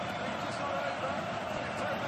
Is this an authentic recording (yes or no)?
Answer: no